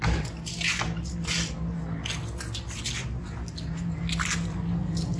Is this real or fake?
real